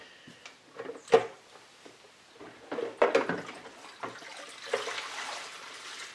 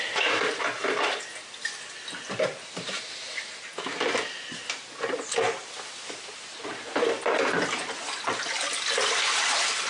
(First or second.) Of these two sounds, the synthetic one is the second